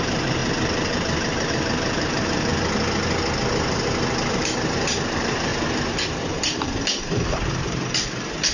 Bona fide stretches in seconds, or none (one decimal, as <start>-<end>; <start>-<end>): 0.4-1.5; 2.5-3.5